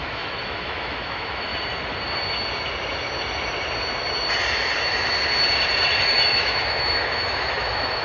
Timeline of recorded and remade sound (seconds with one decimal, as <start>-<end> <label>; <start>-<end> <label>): 0.0-1.5 remade; 1.5-6.3 recorded; 6.3-8.0 remade